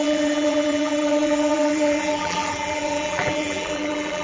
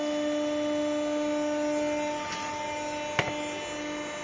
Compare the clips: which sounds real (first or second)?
second